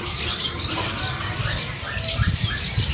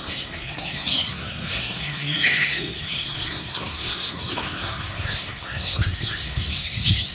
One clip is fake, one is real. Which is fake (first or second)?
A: second